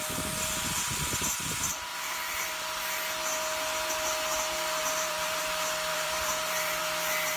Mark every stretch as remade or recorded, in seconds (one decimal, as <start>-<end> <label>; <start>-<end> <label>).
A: 0.0-1.9 recorded; 1.9-2.5 remade; 2.5-4.8 recorded; 4.8-5.4 remade; 5.4-5.9 recorded; 5.9-6.8 remade; 6.8-7.4 recorded